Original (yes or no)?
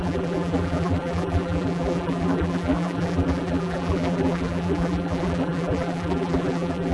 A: no